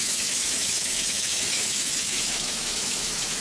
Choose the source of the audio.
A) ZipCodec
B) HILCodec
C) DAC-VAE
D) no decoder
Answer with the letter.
C